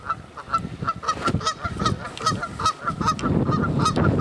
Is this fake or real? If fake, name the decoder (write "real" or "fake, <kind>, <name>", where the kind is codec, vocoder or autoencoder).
real